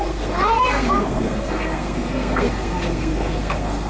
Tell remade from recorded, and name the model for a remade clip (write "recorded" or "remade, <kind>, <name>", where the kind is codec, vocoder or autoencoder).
remade, codec, SNAC